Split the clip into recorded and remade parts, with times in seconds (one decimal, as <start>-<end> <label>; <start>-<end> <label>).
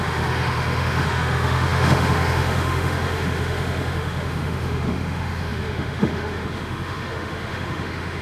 0.0-8.2 remade